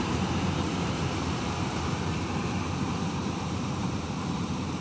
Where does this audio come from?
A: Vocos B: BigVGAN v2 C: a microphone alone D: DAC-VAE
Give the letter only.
B